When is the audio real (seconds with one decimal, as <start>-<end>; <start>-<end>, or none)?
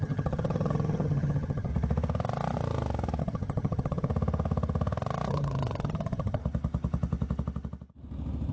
1.7-3.2; 4.1-5.3; 6.4-8.5